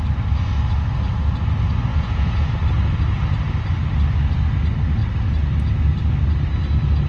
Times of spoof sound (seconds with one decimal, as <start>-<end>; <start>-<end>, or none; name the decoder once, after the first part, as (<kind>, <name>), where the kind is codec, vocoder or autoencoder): 1.9-2.5 (vocoder, Vocos)